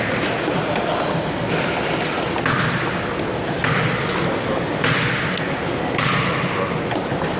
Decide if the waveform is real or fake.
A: real